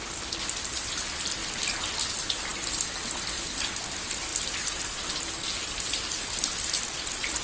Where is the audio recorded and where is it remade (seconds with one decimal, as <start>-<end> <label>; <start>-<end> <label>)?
0.0-7.4 recorded